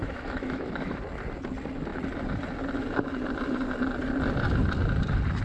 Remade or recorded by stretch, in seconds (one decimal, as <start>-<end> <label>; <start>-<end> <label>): 0.0-1.0 remade; 1.0-5.4 recorded